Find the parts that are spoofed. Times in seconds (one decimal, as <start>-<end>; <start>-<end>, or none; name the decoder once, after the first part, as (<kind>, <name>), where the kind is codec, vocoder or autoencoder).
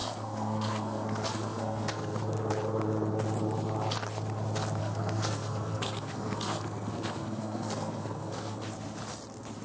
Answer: 0.0-2.2 (codec, SNAC); 4.8-8.6